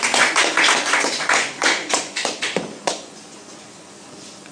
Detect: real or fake fake